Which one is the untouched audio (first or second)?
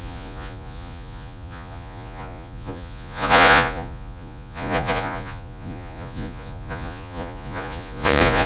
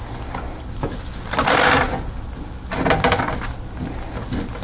second